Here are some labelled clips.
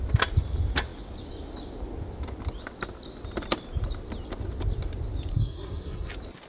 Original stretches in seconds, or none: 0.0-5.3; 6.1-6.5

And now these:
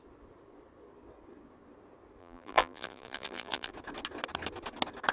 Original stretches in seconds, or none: 0.0-2.2; 3.7-5.1

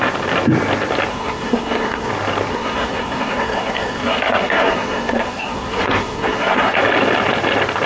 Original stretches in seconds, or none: 0.0-1.1; 2.1-2.5; 6.8-7.9

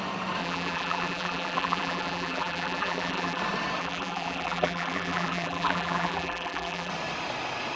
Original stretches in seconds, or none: 0.0-0.4; 3.4-3.8; 6.9-7.8

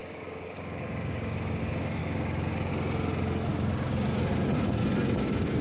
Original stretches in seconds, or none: 1.6-2.0; 2.7-3.5; 4.1-5.6